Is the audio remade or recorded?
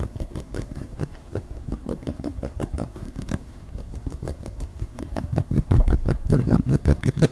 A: remade